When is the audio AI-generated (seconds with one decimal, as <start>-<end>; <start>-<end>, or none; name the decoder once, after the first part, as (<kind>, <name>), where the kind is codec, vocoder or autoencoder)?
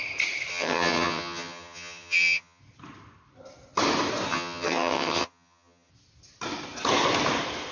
0.5-2.6 (vocoder, HiFi-GAN); 4.3-5.9